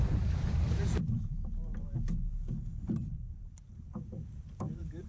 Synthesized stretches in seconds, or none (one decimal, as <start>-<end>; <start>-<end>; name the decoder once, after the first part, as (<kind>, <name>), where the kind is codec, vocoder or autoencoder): 0.0-1.7 (vocoder, BigVGAN v2); 3.0-5.1